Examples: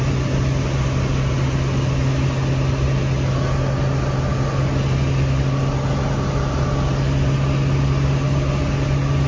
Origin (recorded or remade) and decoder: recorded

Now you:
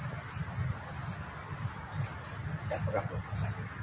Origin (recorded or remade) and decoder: recorded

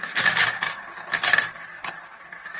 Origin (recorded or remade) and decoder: recorded